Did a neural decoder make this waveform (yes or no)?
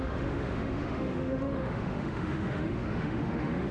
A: yes